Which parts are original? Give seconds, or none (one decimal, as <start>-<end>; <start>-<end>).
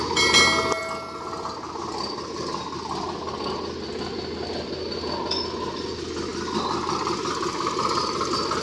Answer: 0.0-8.6